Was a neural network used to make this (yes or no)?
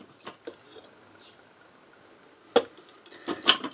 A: no